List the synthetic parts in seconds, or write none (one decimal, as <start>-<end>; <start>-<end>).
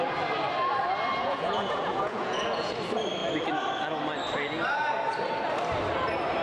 1.2-2.8